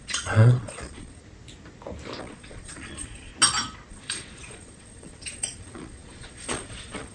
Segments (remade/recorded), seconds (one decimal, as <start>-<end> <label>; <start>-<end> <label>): 0.0-1.2 remade; 1.2-2.2 recorded; 2.2-3.3 remade; 3.3-3.9 recorded; 3.9-7.1 remade